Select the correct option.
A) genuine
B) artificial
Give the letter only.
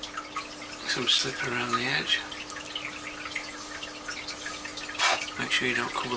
A